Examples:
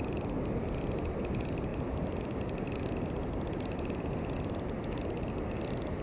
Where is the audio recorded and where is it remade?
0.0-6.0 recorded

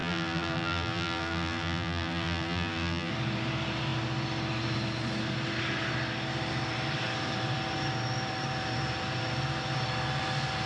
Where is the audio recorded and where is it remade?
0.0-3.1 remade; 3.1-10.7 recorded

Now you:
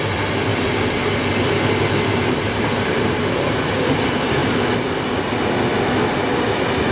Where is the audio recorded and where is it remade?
0.0-4.4 recorded; 4.4-5.0 remade; 5.0-6.9 recorded

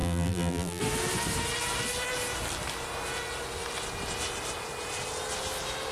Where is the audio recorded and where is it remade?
0.0-0.8 remade; 0.8-5.9 recorded

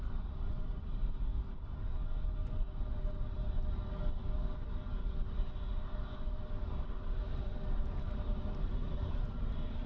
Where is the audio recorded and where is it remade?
0.0-1.3 remade; 1.3-6.6 recorded; 6.6-9.9 remade